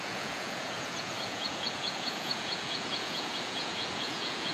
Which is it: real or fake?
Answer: fake